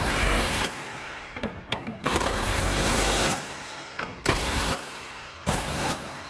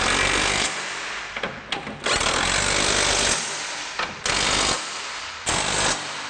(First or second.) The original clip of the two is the second